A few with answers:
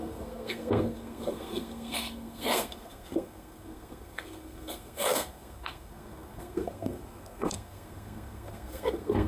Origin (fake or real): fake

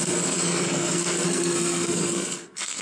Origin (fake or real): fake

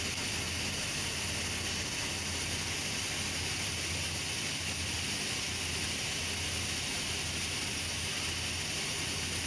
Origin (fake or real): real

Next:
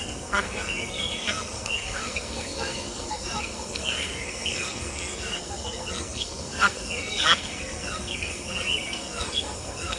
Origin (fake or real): fake